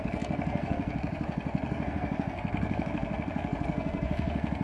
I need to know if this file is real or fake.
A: fake